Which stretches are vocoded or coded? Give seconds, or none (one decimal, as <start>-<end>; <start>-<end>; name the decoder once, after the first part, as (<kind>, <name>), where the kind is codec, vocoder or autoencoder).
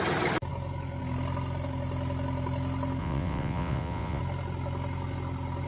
3.0-4.2 (vocoder, WaveNeXt)